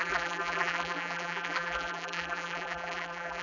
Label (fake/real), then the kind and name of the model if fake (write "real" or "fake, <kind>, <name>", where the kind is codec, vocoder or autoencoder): fake, vocoder, BigVGAN v2